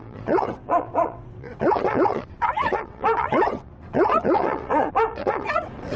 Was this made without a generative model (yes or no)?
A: no